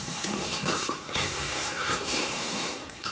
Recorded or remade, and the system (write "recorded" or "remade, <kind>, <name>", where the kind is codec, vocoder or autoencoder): remade, codec, SNAC